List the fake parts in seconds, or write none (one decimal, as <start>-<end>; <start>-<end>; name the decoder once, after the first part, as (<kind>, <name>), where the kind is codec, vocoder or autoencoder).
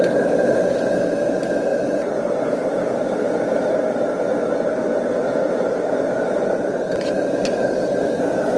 1.7-3.3 (vocoder, BigVGAN v2); 5.2-8.2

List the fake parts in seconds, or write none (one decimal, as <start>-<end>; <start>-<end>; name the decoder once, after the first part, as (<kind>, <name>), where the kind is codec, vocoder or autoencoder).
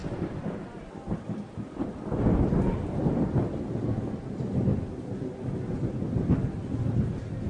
0.0-2.9 (vocoder, BigVGAN v2); 4.7-5.4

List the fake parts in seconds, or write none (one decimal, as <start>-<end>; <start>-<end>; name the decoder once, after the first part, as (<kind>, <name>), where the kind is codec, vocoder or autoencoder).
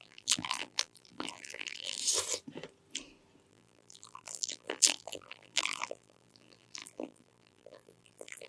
0.0-2.0 (vocoder, BigVGAN v2); 3.5-8.5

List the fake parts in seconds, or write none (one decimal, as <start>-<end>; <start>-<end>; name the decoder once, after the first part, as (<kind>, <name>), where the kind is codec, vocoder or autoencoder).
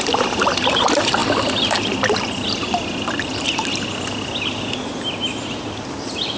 none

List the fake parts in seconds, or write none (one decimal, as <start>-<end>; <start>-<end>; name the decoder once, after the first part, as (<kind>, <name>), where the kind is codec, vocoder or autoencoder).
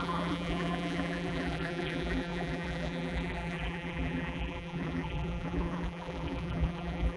0.0-7.2 (vocoder, BigVGAN v2)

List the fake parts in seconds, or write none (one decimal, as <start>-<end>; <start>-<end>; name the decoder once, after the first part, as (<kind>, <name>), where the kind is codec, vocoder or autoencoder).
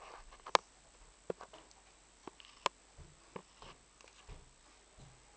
none